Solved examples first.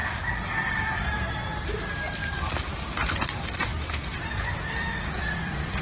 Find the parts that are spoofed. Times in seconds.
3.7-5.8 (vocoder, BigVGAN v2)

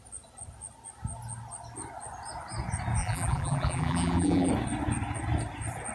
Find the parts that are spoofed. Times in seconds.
3.0-4.5 (vocoder, BigVGAN v2)

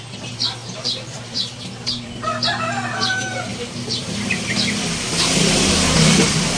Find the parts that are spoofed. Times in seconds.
0.6-2.1 (vocoder, BigVGAN v2); 3.5-4.8